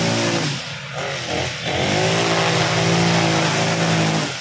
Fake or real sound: real